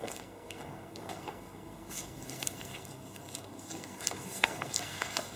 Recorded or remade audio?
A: remade